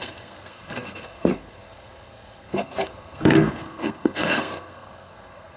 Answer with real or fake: fake